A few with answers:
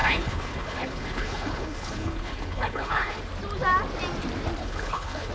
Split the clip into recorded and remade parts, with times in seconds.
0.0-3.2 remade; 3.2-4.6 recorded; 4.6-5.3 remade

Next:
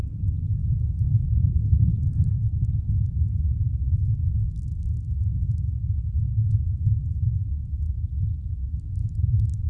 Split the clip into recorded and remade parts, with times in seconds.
0.0-0.6 recorded; 0.6-1.8 remade; 1.8-9.0 recorded; 9.0-9.7 remade